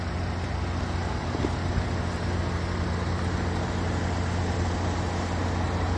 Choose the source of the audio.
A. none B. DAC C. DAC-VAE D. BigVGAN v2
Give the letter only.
A